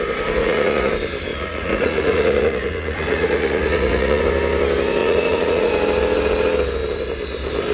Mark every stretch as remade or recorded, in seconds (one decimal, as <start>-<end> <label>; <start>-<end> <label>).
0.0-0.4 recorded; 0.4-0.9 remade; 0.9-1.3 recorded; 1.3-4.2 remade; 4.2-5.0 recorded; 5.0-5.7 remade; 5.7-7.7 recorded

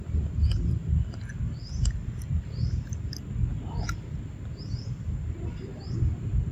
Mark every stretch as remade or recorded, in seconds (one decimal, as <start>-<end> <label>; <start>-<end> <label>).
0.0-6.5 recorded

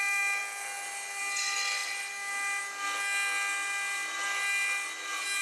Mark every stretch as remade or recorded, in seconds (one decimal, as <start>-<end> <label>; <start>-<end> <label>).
0.0-5.4 recorded